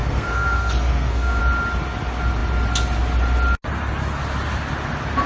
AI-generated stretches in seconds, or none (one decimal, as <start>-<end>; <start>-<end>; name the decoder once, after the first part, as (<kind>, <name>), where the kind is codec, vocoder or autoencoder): 0.0-1.4 (codec, SNAC)